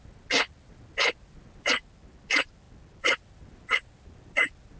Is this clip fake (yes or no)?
no